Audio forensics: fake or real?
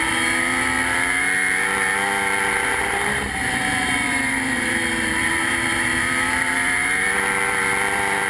fake